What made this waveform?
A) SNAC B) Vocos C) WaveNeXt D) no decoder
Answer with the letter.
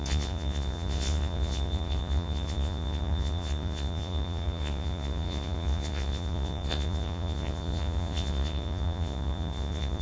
B